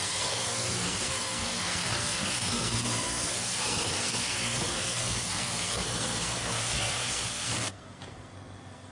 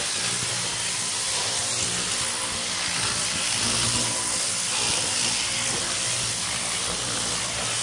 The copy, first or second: first